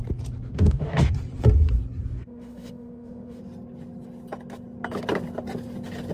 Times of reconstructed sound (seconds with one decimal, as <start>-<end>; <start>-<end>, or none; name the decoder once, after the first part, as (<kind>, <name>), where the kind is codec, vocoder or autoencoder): 0.5-1.1 (autoencoder, DAC-VAE); 2.1-3.4